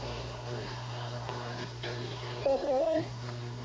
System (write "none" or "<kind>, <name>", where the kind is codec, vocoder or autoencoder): codec, SNAC